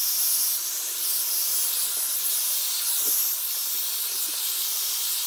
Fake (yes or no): no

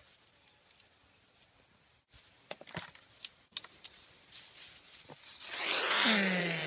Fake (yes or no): no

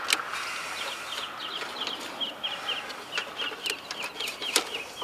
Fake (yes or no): no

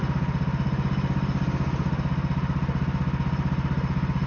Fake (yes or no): no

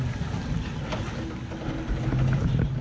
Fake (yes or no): no